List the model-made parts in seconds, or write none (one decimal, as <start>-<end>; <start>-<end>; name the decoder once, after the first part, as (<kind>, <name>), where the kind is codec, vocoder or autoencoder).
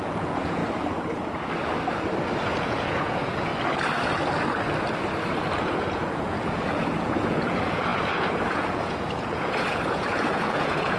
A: 0.0-0.6 (vocoder, Vocos); 2.5-3.5; 5.6-11.0